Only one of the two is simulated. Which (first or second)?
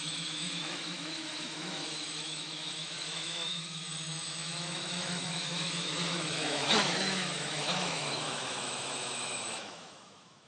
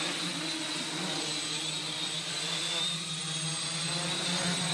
first